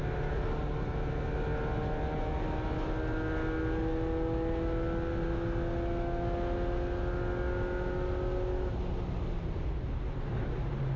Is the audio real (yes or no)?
yes